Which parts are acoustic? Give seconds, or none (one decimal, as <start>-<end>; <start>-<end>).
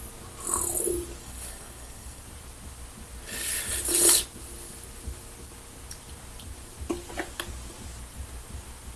0.0-1.2; 2.2-9.0